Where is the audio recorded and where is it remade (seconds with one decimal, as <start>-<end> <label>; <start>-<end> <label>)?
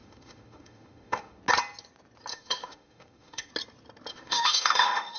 0.0-1.4 remade; 1.4-2.3 recorded; 2.3-3.5 remade; 3.5-4.1 recorded; 4.1-5.2 remade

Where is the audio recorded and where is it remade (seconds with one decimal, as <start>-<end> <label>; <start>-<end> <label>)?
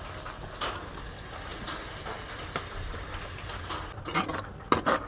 0.0-5.1 recorded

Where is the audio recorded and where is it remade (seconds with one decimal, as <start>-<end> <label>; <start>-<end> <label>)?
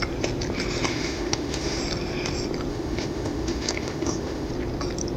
0.0-0.9 recorded; 0.9-1.8 remade; 1.8-2.7 recorded; 2.7-4.5 remade; 4.5-5.2 recorded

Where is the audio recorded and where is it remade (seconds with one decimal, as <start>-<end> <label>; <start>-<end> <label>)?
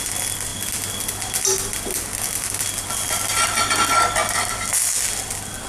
0.0-5.7 recorded